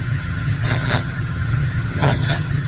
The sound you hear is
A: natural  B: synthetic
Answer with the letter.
B